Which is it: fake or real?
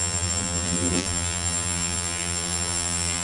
fake